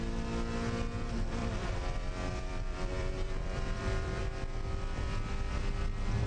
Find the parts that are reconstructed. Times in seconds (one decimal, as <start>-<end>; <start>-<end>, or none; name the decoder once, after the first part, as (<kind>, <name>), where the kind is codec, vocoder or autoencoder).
1.4-4.2 (vocoder, BigVGAN v2)